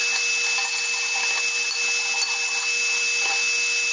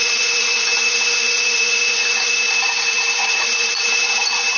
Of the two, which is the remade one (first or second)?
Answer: second